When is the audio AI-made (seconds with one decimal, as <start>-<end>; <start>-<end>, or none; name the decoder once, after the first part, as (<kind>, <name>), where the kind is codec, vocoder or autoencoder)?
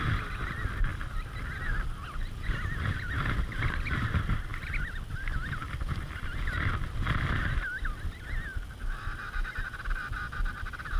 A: none